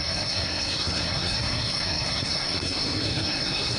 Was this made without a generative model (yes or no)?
no